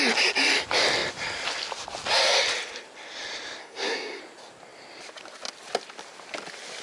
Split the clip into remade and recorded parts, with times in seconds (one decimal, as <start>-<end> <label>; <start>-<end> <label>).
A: 0.0-3.6 recorded; 3.6-4.2 remade; 4.2-6.8 recorded